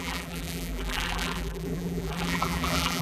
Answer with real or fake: fake